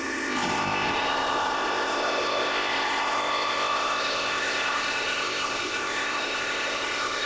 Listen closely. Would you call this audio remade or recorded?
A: remade